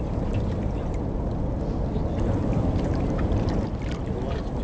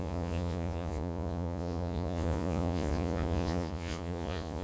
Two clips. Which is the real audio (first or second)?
first